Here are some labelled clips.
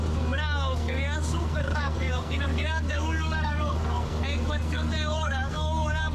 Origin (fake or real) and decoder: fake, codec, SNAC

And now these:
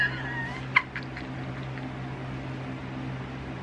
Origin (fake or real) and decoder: real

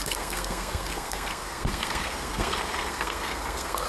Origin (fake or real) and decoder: fake, codec, SNAC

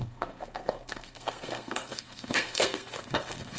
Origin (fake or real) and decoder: fake, codec, SNAC